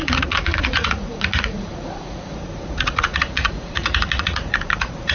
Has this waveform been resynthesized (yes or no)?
yes